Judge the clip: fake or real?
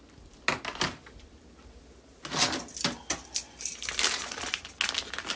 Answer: real